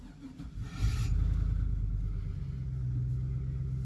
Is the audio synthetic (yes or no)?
no